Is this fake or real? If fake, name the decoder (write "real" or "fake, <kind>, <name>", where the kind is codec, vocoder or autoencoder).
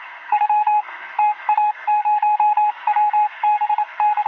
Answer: fake, codec, SNAC